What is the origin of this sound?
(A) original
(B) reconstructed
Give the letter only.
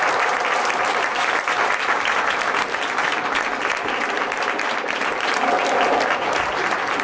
B